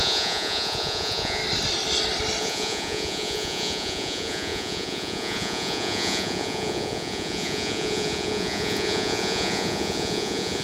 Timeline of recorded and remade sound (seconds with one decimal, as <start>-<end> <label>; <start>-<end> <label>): 0.0-1.4 remade; 1.4-2.4 recorded; 2.4-10.6 remade